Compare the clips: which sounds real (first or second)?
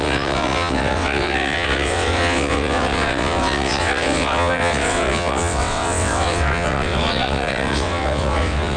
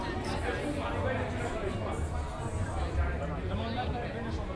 second